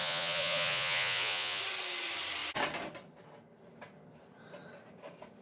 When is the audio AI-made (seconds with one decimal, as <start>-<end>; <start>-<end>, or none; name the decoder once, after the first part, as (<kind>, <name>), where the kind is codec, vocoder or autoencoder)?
0.0-1.6 (vocoder, Vocos)